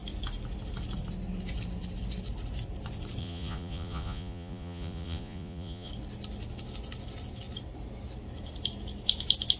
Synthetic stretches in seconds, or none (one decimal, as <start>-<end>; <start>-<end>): 3.2-5.9